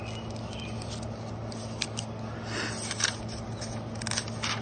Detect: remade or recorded recorded